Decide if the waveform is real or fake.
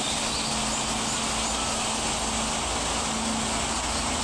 real